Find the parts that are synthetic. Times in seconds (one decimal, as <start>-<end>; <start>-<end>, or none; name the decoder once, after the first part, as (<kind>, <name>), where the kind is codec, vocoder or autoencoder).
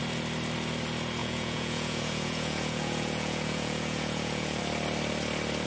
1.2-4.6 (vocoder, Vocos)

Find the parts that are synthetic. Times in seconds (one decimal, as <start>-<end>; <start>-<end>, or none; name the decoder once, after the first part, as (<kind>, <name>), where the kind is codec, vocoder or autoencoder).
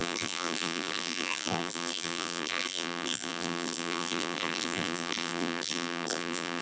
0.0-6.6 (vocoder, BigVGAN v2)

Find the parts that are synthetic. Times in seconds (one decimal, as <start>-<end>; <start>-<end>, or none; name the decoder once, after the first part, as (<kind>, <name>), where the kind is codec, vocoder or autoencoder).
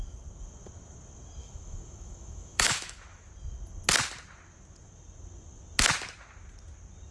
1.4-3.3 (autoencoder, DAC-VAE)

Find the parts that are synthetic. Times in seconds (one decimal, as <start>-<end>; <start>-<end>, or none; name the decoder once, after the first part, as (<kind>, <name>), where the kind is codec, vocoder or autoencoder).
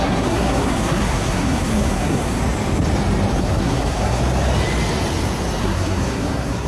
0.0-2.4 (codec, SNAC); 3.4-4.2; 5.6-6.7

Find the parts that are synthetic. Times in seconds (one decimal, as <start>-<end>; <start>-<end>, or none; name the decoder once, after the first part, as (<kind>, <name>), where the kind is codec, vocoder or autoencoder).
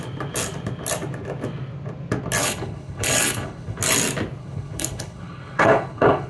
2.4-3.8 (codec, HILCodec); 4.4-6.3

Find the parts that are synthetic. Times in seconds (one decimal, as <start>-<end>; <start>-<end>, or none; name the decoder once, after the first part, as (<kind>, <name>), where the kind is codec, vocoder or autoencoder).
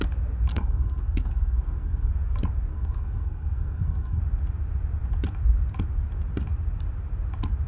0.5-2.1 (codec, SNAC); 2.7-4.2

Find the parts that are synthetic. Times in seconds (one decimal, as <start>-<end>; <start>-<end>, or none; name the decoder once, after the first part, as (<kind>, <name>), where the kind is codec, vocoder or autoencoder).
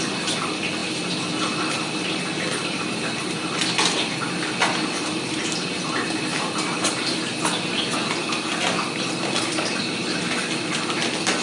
none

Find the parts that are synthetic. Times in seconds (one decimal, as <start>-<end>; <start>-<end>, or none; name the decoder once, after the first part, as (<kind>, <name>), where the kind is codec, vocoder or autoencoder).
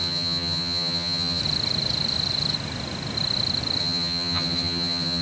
0.0-1.4 (vocoder, HiFi-GAN); 3.8-5.2